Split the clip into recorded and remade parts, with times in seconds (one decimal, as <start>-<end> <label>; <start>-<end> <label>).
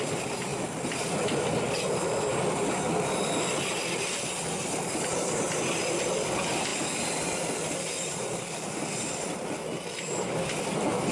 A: 0.0-0.5 recorded; 0.5-5.1 remade; 5.1-11.1 recorded